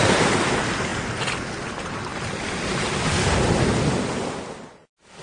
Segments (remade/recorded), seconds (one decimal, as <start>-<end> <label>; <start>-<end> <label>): 0.0-5.2 recorded